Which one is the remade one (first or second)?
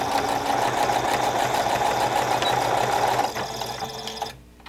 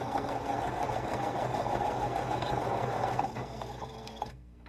second